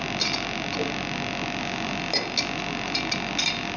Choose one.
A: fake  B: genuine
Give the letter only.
B